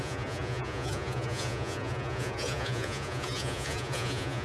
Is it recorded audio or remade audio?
remade